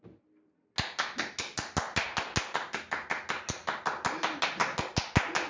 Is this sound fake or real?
real